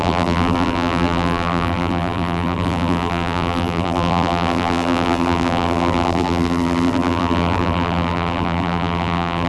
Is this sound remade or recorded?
remade